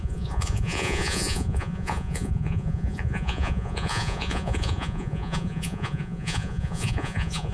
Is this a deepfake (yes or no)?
yes